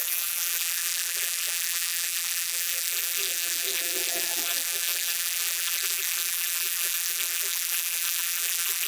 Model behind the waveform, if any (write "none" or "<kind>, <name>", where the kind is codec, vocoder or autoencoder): vocoder, BigVGAN v2